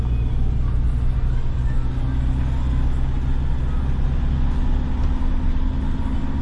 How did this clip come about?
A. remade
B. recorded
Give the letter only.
B